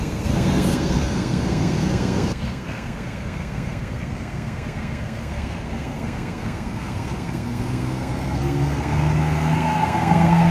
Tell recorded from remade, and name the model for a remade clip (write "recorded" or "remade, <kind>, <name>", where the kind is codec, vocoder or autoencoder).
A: remade, codec, SNAC